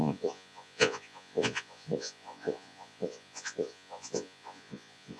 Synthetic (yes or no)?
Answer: yes